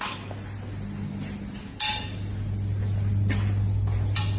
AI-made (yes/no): no